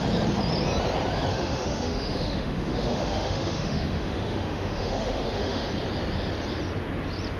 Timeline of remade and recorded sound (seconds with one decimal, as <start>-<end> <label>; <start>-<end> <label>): 0.0-1.3 recorded; 1.3-5.7 remade; 5.7-7.4 recorded